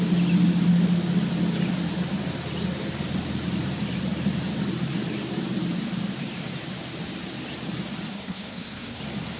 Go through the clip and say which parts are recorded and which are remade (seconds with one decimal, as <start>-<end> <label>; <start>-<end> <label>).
0.0-8.1 recorded; 8.1-9.0 remade; 9.0-9.4 recorded